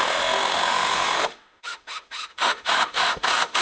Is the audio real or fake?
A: fake